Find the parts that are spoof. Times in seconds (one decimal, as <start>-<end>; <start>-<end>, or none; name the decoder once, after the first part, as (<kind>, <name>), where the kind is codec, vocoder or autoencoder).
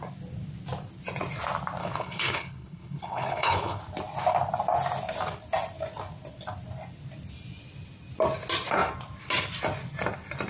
1.8-3.8 (codec, HILCodec)